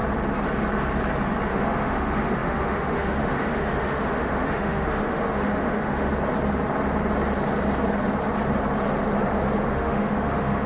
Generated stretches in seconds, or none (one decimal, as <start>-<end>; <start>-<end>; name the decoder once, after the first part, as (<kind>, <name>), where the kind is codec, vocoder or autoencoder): 1.5-6.1 (autoencoder, DAC-VAE); 9.7-10.7